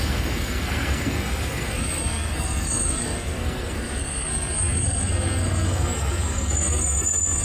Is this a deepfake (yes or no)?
yes